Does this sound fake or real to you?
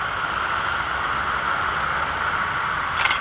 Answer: fake